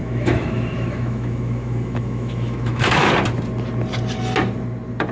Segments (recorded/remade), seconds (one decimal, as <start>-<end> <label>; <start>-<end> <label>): 0.0-3.1 remade; 3.1-5.1 recorded